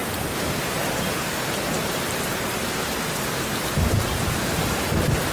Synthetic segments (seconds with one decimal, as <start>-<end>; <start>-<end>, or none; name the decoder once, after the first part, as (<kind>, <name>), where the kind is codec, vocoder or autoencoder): 0.0-0.7 (vocoder, BigVGAN v2); 1.7-5.3